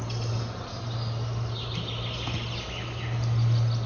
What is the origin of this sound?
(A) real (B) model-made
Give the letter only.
A